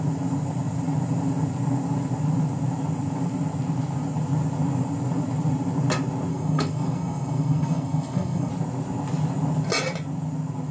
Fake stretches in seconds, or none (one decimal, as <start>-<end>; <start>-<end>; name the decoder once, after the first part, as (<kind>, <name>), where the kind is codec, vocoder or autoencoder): 6.3-8.5 (codec, SNAC)